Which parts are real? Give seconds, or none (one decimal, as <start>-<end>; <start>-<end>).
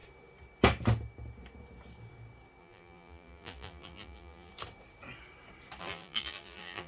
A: 0.0-2.6; 4.5-5.8